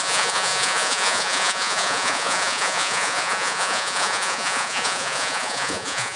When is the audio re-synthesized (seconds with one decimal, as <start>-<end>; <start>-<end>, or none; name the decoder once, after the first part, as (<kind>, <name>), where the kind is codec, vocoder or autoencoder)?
0.0-6.2 (vocoder, Vocos)